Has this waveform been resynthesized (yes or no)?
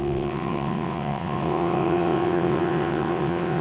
yes